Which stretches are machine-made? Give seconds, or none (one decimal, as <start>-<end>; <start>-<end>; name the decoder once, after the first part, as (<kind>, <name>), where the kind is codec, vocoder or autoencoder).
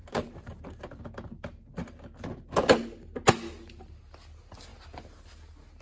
0.0-1.0 (vocoder, BigVGAN v2)